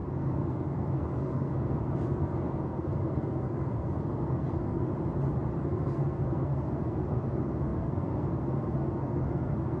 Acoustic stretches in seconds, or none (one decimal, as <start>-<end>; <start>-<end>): 4.9-5.6